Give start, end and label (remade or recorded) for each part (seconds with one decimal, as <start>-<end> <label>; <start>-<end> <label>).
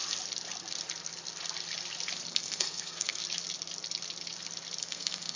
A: 0.0-2.3 recorded; 2.3-3.2 remade; 3.2-4.8 recorded; 4.8-5.4 remade